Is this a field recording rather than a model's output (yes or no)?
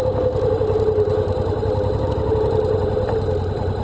yes